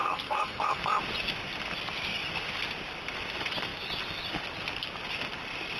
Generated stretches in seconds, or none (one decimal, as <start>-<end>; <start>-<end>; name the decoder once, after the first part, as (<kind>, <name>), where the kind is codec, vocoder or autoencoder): 0.0-0.8 (codec, SNAC)